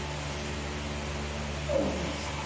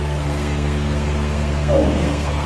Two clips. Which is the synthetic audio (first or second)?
second